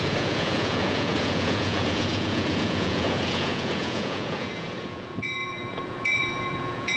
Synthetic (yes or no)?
yes